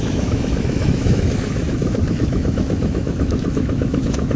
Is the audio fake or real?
fake